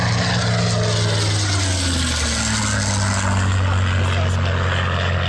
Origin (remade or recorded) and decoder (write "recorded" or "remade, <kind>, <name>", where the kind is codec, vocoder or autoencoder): recorded